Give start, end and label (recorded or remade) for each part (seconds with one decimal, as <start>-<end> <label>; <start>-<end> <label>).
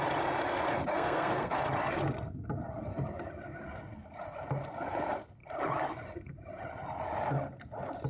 0.0-0.9 recorded; 0.9-1.5 remade; 1.5-8.1 recorded